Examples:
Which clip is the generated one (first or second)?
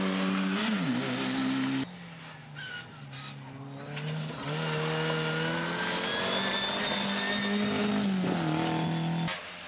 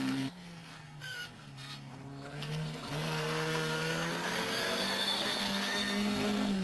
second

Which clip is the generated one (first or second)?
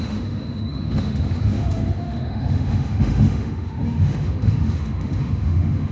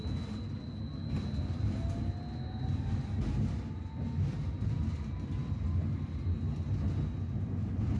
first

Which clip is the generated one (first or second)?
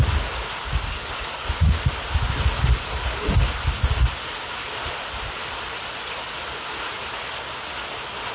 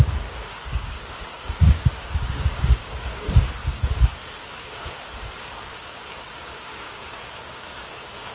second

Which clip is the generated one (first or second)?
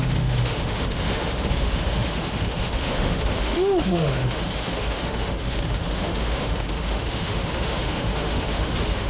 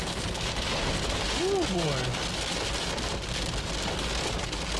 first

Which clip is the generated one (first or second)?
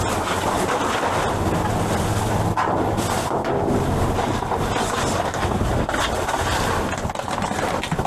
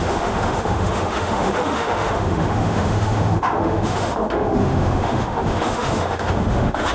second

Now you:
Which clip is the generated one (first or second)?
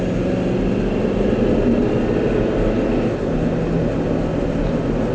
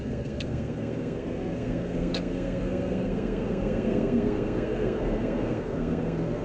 second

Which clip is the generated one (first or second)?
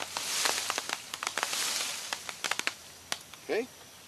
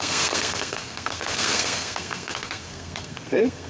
second